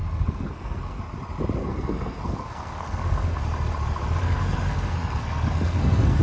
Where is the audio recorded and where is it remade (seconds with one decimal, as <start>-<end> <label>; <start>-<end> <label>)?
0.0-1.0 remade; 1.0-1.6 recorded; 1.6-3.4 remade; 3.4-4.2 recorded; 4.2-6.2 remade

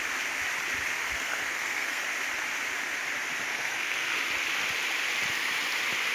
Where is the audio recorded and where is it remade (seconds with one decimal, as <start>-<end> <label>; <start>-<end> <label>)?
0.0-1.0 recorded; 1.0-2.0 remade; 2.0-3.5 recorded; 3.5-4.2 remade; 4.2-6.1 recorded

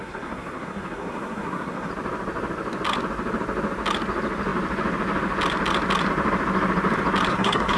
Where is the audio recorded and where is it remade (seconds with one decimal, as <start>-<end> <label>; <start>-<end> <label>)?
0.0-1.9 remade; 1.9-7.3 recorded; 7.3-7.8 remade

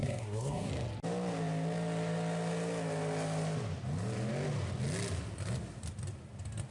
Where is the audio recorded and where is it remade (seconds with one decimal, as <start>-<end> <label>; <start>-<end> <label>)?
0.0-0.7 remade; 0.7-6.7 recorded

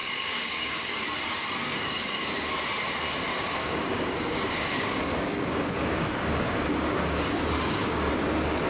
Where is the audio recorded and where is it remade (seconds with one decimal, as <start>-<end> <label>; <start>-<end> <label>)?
0.0-1.0 remade; 1.0-1.6 recorded; 1.6-2.2 remade; 2.2-3.3 recorded; 3.3-8.1 remade; 8.1-8.7 recorded

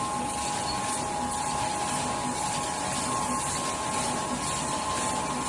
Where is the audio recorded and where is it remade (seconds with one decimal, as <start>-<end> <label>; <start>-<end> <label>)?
0.0-5.5 recorded

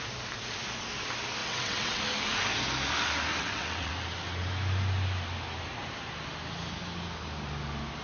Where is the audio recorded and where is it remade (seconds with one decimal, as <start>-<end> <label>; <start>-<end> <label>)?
0.0-1.4 recorded; 1.4-2.0 remade; 2.0-3.3 recorded; 3.3-3.9 remade; 3.9-8.0 recorded